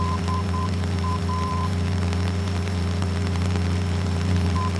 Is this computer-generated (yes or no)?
yes